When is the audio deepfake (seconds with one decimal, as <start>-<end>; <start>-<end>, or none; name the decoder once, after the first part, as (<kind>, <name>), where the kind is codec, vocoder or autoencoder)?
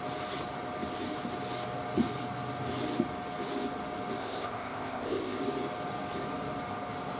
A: 4.2-5.4 (codec, ZipCodec)